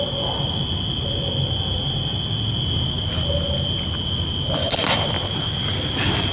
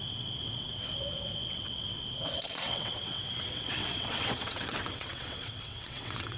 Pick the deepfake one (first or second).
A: second